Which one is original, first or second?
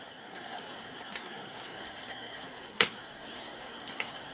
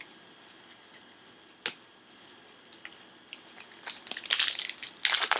second